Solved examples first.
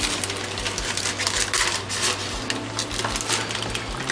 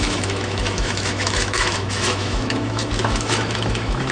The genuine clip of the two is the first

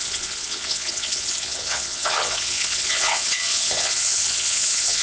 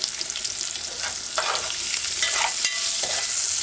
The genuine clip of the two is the second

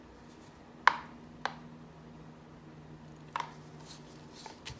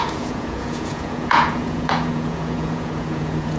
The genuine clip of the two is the first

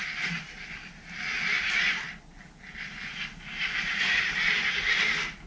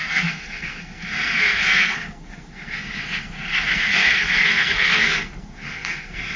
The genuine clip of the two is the first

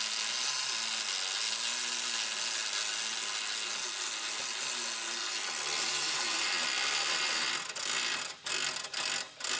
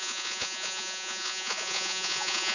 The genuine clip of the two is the first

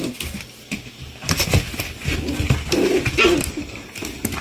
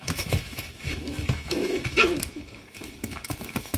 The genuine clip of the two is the first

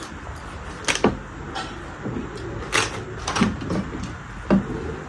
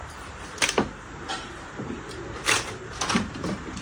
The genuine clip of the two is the first